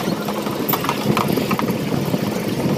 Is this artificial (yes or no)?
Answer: no